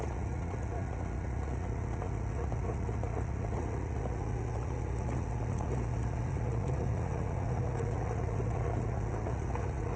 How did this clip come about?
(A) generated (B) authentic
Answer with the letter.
A